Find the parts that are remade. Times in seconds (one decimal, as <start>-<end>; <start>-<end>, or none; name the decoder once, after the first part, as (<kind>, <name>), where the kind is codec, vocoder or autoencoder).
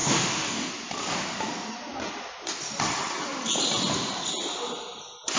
0.0-0.7 (autoencoder, DAC-VAE)